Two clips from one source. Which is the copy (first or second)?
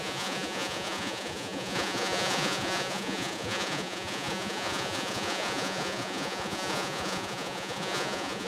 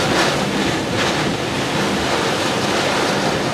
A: first